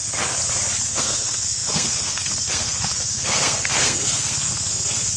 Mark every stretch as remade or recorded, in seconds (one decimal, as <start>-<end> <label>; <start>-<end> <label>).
0.0-0.9 recorded; 0.9-5.2 remade